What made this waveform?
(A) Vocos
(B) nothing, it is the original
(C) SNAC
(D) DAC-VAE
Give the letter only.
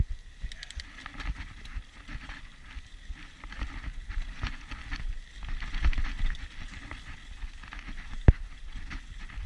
B